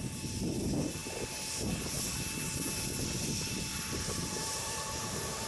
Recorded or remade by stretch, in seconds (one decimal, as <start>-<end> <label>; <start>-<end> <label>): 0.0-3.7 recorded; 3.7-5.5 remade